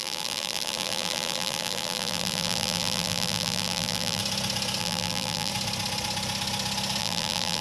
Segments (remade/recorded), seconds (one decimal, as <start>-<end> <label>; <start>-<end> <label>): 0.0-4.2 remade; 4.2-4.8 recorded; 4.8-5.5 remade; 5.5-7.0 recorded; 7.0-7.6 remade